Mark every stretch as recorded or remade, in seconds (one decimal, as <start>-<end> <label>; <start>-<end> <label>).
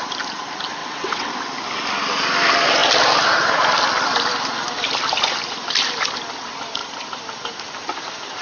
0.0-0.8 recorded; 0.8-1.3 remade; 1.3-8.4 recorded